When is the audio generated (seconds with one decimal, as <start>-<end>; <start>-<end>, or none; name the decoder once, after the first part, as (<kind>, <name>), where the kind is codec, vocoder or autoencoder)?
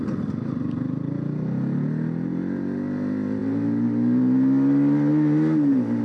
none